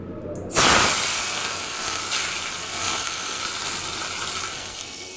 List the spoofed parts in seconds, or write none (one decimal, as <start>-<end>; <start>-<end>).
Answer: 1.1-2.0; 2.6-3.4; 4.5-5.2